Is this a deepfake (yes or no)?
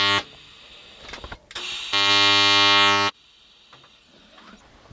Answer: no